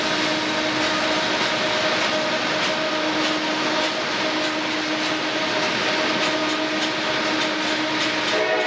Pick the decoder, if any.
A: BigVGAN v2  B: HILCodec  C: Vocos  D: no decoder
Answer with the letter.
D